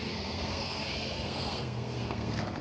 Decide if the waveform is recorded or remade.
remade